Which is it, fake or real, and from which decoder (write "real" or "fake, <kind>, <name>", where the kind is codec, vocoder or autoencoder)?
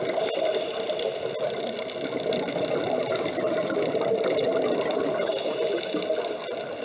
real